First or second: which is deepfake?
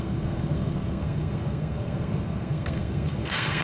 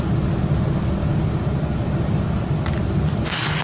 first